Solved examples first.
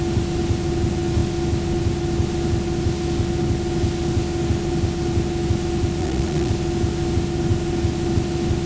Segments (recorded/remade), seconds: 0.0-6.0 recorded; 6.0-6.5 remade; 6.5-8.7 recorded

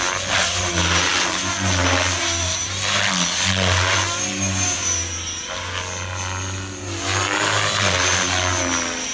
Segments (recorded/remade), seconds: 0.0-9.1 recorded

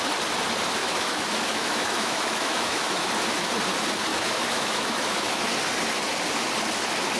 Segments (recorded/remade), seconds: 0.0-0.8 recorded; 0.8-3.1 remade; 3.1-4.1 recorded; 4.1-5.4 remade; 5.4-7.2 recorded